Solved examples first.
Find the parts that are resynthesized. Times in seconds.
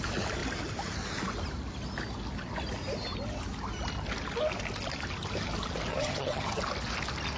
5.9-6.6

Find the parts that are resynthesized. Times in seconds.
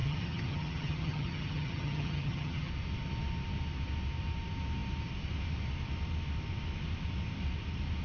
0.0-2.7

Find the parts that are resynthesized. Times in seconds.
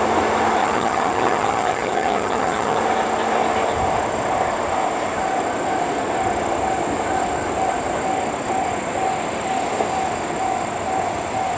0.6-2.8